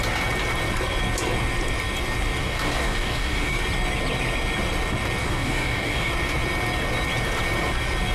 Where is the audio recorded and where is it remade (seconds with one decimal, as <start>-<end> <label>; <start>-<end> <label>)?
0.0-2.4 recorded; 2.4-3.6 remade; 3.6-5.2 recorded; 5.2-6.1 remade; 6.1-8.1 recorded